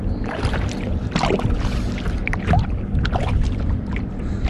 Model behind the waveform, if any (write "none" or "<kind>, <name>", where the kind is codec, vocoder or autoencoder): none